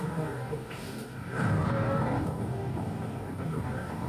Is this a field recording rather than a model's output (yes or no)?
no